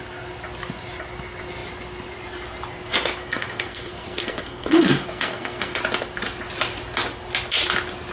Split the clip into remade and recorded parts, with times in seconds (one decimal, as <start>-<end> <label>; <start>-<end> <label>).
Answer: 0.0-3.2 recorded; 3.2-5.8 remade; 5.8-8.1 recorded